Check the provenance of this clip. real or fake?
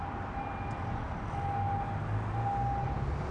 real